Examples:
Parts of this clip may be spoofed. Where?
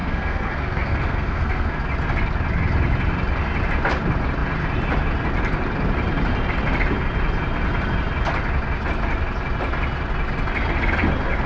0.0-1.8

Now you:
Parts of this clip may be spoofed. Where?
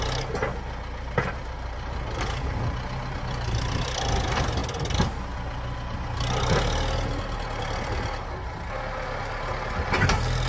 none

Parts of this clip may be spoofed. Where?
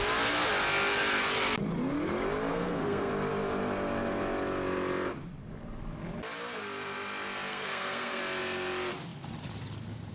2.5-3.1; 7.5-8.2